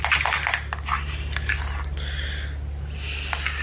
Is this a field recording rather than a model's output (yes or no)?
yes